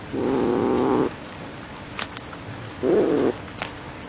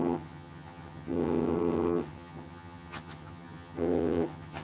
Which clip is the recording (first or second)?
first